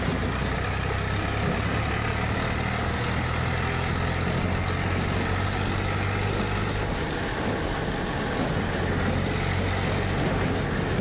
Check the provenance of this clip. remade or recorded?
recorded